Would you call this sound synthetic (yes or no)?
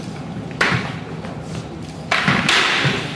yes